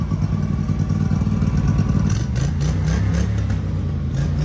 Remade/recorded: recorded